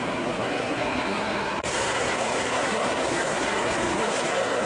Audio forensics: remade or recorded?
remade